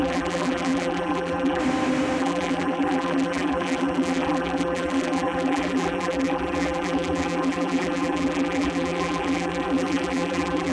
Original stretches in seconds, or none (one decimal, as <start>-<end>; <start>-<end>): 1.6-2.2